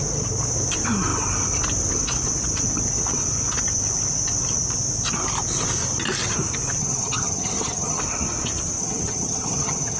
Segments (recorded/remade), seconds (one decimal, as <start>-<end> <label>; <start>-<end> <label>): 0.0-6.8 recorded; 6.8-8.0 remade; 8.0-8.8 recorded; 8.8-10.0 remade